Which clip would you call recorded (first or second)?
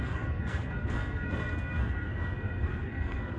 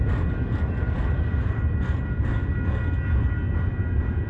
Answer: second